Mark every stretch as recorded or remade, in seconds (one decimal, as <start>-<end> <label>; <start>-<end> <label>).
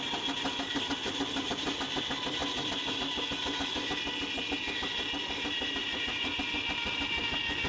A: 0.0-5.8 recorded; 5.8-6.4 remade; 6.4-7.7 recorded